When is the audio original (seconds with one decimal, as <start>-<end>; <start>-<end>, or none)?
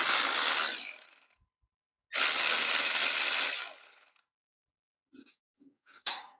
0.0-5.2